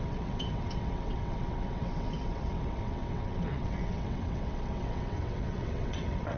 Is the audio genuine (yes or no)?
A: no